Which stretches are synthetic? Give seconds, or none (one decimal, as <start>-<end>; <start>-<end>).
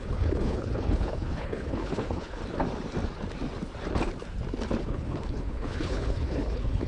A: 0.0-2.4; 4.8-6.9